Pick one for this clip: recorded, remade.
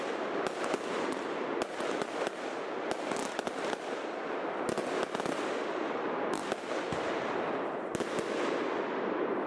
recorded